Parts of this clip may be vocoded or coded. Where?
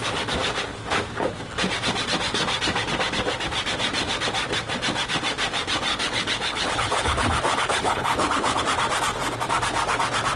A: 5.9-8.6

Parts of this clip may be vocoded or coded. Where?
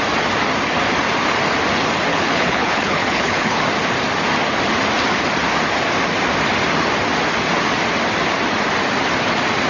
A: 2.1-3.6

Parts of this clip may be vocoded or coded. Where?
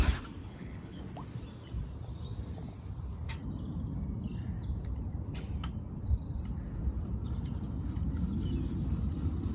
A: 0.4-1.0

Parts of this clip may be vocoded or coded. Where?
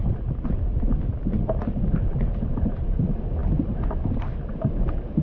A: none